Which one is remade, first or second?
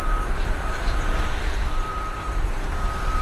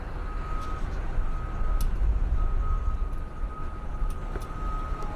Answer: first